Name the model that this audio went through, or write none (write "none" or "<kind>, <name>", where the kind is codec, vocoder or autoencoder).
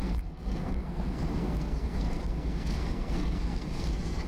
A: codec, SNAC